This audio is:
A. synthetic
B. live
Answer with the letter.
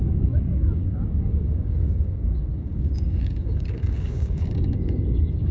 A